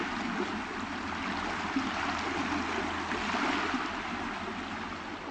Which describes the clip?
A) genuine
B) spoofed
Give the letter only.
A